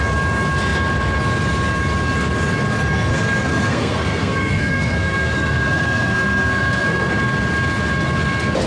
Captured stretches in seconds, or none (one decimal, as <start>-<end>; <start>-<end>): 0.0-3.1; 7.1-8.7